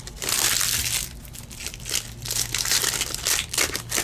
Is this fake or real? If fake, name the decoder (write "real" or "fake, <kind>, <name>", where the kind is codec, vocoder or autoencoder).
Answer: real